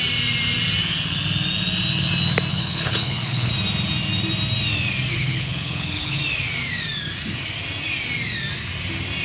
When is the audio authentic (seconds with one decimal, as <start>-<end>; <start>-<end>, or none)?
0.0-2.5; 3.5-5.1; 6.2-9.2